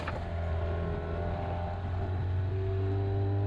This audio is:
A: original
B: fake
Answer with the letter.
A